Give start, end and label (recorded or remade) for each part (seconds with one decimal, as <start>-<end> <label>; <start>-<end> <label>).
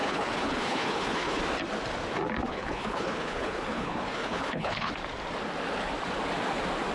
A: 0.0-1.4 remade; 1.4-2.5 recorded; 2.5-4.9 remade; 4.9-6.9 recorded